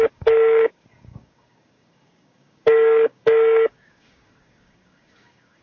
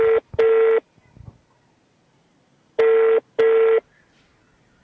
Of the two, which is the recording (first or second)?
second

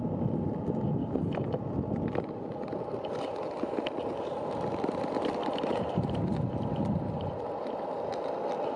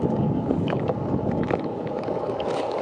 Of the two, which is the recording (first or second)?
first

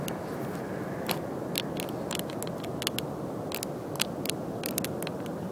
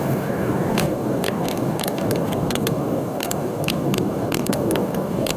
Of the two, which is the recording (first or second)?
first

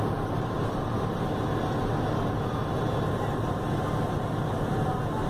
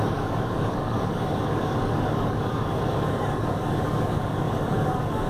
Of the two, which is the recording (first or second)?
first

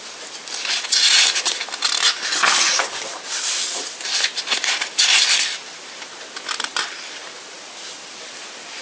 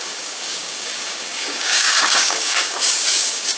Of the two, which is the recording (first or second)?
first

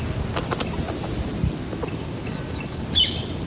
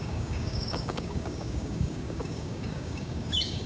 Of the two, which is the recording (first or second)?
first